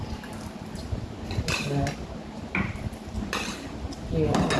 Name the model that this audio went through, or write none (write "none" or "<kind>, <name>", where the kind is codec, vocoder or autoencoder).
none